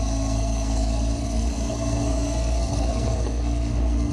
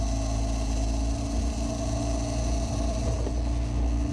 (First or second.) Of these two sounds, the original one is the second